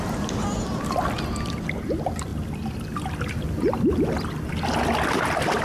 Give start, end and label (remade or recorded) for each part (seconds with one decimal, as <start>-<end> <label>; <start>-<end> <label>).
0.0-5.6 recorded